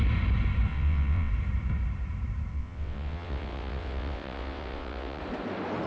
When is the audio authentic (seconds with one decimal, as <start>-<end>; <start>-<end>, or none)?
0.0-0.7; 1.3-2.5; 5.2-5.9